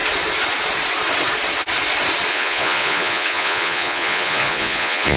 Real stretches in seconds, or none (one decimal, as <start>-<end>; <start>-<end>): 0.0-2.3